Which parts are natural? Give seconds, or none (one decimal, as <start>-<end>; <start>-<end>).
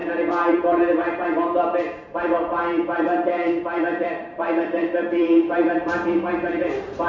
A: 0.0-0.5